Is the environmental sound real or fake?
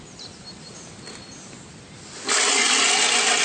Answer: fake